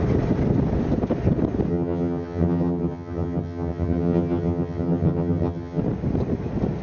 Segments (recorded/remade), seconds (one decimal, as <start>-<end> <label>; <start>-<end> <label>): 0.0-1.7 recorded; 1.7-5.8 remade; 5.8-6.8 recorded